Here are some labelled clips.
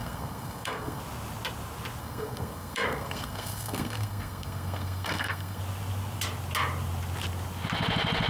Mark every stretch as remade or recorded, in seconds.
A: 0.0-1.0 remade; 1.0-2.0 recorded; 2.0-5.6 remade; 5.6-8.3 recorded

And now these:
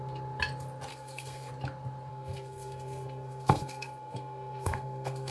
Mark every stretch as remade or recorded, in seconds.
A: 0.0-0.9 recorded; 0.9-1.5 remade; 1.5-2.1 recorded; 2.1-5.3 remade

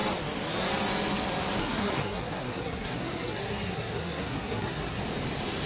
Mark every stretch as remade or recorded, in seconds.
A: 0.0-1.6 recorded; 1.6-5.0 remade; 5.0-5.7 recorded

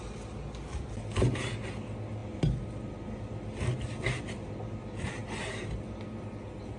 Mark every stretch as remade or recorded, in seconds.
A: 0.0-6.8 recorded

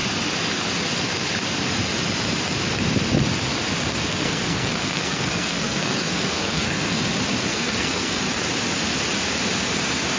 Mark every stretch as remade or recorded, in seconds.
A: 0.0-4.1 recorded; 4.1-7.0 remade; 7.0-7.5 recorded; 7.5-8.2 remade; 8.2-10.2 recorded

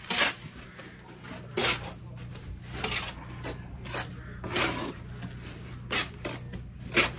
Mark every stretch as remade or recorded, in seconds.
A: 0.0-7.2 recorded

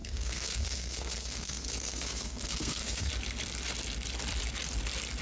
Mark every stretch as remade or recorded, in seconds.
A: 0.0-3.1 remade; 3.1-5.2 recorded